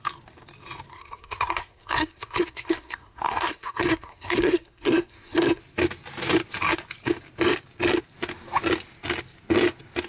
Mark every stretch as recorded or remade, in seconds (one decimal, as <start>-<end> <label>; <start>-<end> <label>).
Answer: 0.0-0.9 recorded; 0.9-5.6 remade; 5.6-10.1 recorded